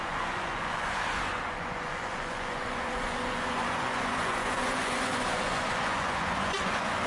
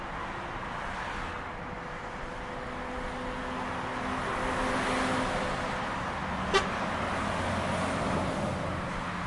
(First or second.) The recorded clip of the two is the second